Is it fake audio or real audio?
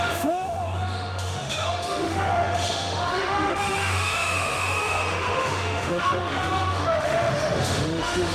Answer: fake